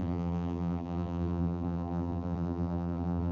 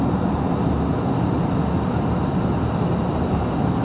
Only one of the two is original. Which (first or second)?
second